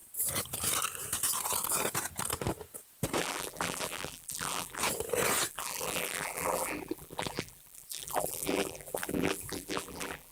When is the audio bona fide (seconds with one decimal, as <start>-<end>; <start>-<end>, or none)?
0.0-3.2; 4.8-5.5